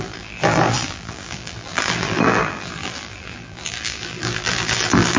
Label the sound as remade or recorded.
remade